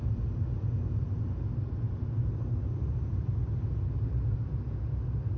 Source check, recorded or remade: recorded